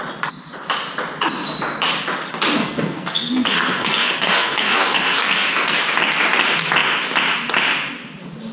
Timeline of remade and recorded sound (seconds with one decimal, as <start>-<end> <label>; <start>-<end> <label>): 0.0-2.6 recorded; 2.6-5.8 remade; 5.8-8.5 recorded